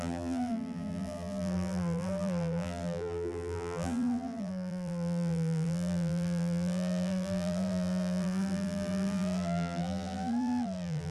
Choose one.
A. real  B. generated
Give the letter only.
B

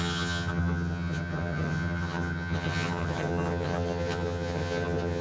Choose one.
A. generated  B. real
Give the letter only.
A